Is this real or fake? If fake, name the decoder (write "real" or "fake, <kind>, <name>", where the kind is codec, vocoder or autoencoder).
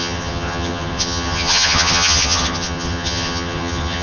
fake, vocoder, HiFi-GAN